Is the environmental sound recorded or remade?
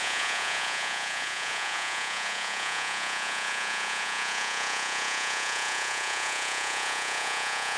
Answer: remade